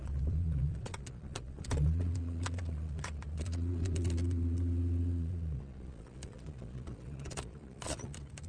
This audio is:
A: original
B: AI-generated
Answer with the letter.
B